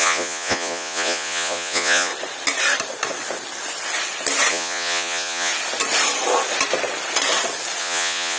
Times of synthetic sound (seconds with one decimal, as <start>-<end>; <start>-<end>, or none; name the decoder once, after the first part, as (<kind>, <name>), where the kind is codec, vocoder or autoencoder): 0.0-2.1 (vocoder, Vocos); 4.5-5.5; 7.8-8.4